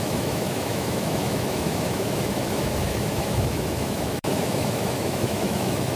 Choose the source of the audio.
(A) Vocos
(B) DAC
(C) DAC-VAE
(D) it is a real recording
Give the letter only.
C